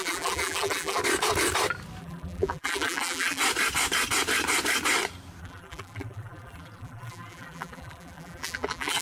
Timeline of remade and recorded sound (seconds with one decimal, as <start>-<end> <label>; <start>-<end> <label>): 0.0-1.0 remade; 1.0-2.0 recorded; 2.0-3.4 remade; 3.4-5.4 recorded; 5.4-9.0 remade